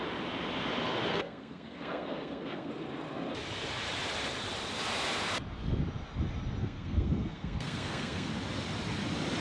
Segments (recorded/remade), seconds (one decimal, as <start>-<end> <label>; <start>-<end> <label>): 0.0-1.1 recorded; 1.1-2.7 remade; 2.7-6.6 recorded; 6.6-8.3 remade; 8.3-9.4 recorded

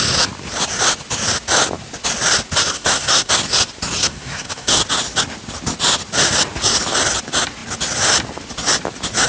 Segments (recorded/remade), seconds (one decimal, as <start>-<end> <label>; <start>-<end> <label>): 0.0-2.7 recorded; 2.7-3.3 remade; 3.3-4.0 recorded; 4.0-4.8 remade; 4.8-9.3 recorded

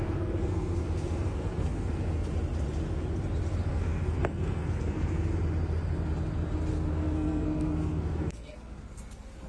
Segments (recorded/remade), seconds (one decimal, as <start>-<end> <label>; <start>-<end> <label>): 0.0-2.3 remade; 2.3-3.7 recorded; 3.7-5.3 remade; 5.3-6.7 recorded; 6.7-9.5 remade